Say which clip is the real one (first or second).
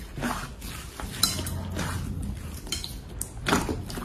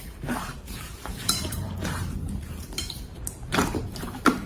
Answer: first